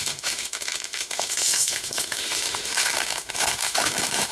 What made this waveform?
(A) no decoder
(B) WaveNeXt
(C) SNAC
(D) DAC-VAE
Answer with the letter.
D